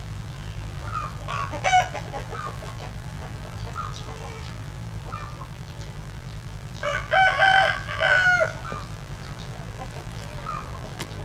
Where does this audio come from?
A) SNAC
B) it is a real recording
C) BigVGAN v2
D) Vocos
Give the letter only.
C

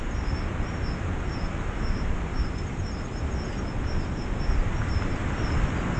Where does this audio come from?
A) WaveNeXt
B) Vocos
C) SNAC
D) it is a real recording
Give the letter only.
D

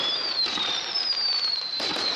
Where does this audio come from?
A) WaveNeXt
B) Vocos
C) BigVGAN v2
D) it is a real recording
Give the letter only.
C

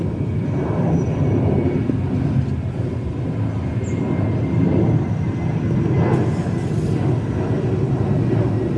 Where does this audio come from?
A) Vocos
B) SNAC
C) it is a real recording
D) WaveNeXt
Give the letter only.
C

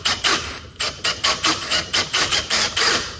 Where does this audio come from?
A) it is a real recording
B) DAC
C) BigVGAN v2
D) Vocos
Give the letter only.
C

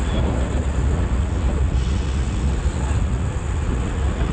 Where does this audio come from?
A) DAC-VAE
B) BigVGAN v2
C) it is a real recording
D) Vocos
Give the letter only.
D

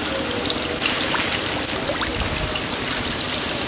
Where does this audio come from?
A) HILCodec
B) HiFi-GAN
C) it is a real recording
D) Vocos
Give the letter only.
C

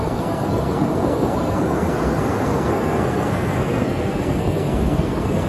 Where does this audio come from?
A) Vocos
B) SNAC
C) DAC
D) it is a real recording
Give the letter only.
B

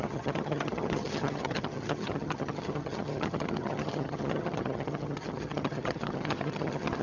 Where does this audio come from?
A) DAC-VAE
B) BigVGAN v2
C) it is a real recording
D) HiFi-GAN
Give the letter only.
D